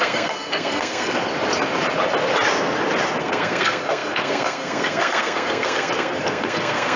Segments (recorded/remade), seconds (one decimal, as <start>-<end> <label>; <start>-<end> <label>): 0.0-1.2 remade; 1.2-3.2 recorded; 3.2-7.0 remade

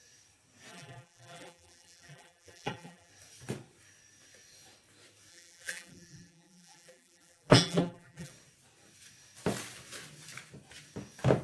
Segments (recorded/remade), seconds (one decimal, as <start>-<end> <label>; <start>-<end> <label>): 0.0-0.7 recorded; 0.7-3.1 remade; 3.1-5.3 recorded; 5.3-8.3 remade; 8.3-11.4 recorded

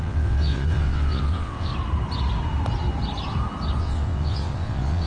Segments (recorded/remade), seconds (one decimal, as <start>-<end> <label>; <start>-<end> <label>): 0.0-1.7 remade; 1.7-3.8 recorded; 3.8-5.1 remade

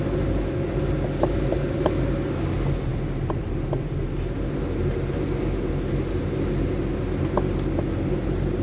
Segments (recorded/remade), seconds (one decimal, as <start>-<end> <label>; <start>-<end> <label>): 0.0-8.6 recorded